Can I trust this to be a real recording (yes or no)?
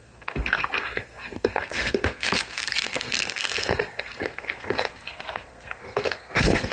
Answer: no